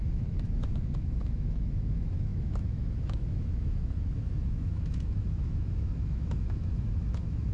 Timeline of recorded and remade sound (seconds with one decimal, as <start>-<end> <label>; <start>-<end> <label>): 0.0-7.5 remade